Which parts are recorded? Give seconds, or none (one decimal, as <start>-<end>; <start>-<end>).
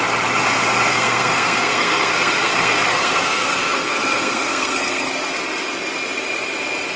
0.0-0.9; 5.1-7.0